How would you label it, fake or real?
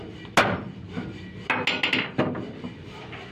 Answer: real